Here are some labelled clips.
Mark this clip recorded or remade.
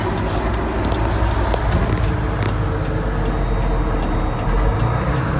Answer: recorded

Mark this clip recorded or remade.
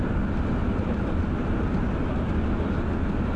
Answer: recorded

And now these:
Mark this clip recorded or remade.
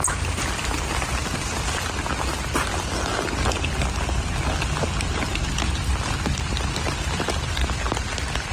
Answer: recorded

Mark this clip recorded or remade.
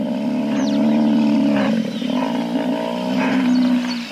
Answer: recorded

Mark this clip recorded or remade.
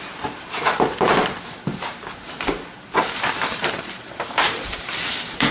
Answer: remade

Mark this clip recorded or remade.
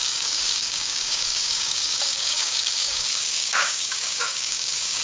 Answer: remade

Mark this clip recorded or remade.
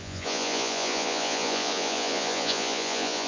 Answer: remade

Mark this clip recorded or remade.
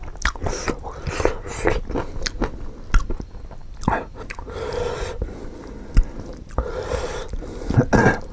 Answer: recorded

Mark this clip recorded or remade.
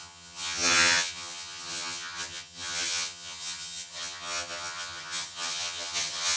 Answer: remade